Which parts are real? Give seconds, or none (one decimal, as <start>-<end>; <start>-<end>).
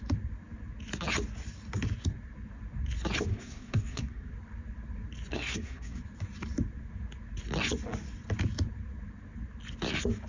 0.0-3.3; 4.3-5.3; 6.0-10.3